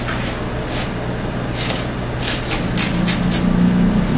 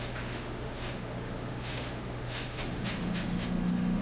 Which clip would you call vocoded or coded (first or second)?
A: second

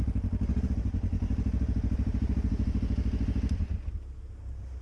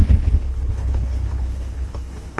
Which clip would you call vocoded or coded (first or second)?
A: second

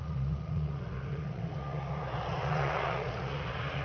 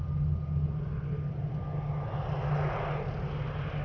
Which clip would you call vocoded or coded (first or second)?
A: first